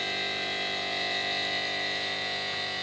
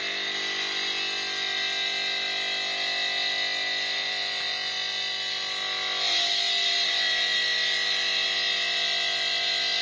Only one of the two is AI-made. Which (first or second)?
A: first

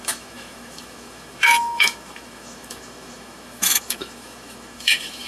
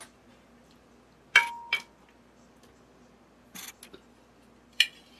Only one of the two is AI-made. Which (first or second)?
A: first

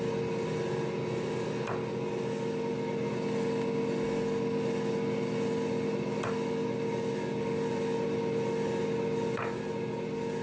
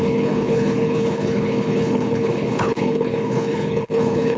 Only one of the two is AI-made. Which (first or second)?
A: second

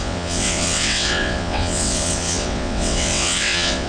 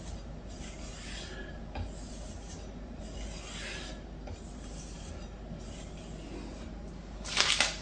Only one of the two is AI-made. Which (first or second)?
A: first